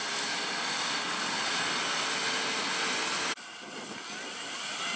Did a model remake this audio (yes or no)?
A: no